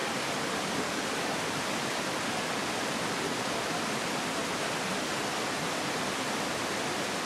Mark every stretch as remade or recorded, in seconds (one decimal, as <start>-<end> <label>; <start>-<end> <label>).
0.0-7.3 recorded